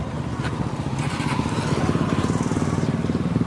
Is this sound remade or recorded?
recorded